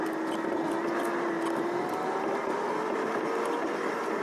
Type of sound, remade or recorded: recorded